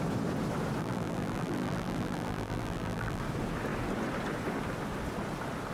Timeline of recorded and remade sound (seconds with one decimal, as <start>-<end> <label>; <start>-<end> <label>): 0.0-0.8 recorded; 0.8-3.2 remade; 3.2-5.7 recorded